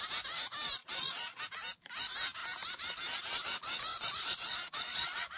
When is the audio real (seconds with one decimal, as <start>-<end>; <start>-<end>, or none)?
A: 0.0-0.8; 1.4-3.9